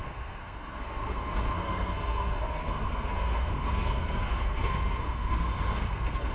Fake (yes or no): yes